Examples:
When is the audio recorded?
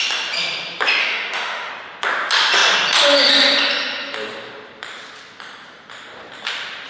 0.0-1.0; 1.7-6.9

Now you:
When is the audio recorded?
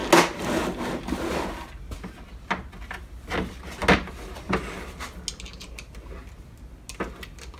0.0-7.6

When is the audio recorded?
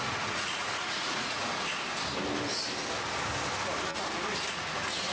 1.4-4.5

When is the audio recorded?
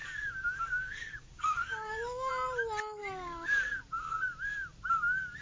2.3-3.0; 3.8-5.4